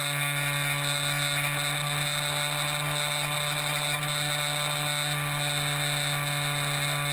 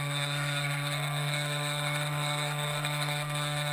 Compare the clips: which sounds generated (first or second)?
second